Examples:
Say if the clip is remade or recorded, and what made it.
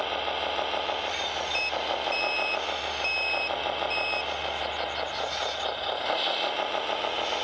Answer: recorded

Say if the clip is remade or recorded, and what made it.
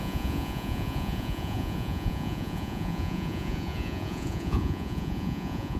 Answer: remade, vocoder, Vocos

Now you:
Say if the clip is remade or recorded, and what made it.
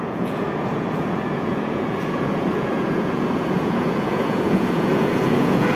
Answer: remade, vocoder, Vocos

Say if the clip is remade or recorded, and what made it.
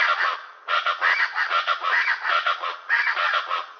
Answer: remade, vocoder, Vocos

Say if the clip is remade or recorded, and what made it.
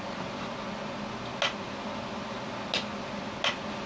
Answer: recorded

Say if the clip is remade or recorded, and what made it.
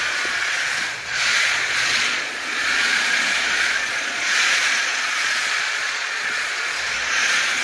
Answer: remade, vocoder, Vocos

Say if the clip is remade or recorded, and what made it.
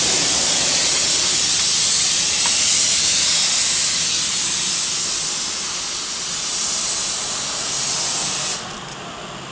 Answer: recorded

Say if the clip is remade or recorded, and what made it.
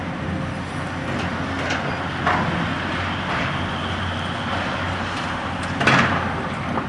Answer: recorded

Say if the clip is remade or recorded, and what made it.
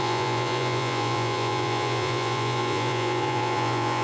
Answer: remade, vocoder, Vocos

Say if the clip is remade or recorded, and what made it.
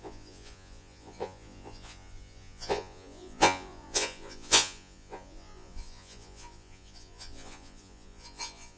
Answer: remade, vocoder, Vocos